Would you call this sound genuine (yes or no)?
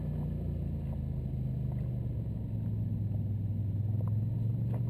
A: yes